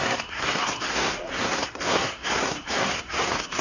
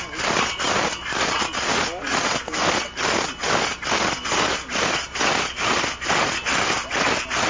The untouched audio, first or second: second